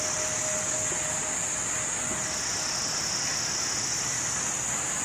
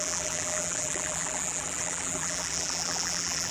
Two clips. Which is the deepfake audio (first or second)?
second